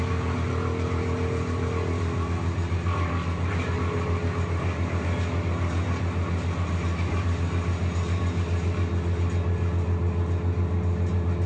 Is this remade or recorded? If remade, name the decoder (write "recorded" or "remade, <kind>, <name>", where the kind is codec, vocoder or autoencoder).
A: recorded